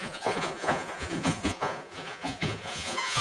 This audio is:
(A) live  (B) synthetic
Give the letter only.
B